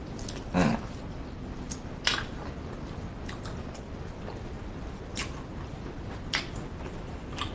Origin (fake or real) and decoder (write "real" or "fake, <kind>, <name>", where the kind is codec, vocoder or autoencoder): real